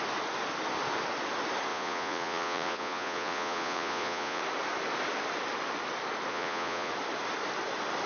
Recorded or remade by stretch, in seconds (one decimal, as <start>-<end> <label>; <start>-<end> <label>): 0.0-1.7 recorded; 1.7-4.4 remade; 4.4-6.3 recorded; 6.3-6.9 remade; 6.9-8.1 recorded